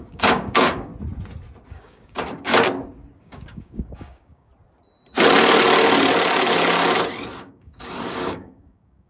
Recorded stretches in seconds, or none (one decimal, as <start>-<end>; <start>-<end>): 0.9-1.7; 2.5-3.2; 4.5-7.4